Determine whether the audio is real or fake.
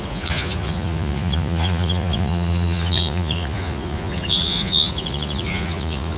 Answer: fake